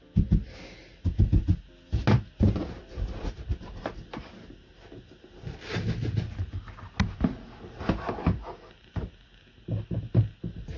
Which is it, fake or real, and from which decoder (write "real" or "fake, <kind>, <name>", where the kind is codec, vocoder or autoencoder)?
real